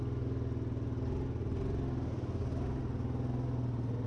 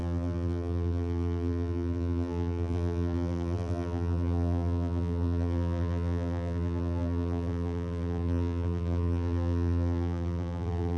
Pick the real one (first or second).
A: first